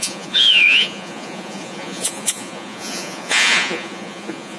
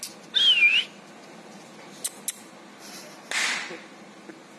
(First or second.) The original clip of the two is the second